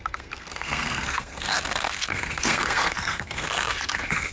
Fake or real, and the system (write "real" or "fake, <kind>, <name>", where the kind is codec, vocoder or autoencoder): fake, codec, SNAC